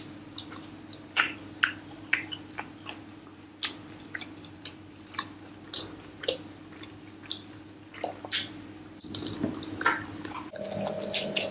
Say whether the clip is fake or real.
real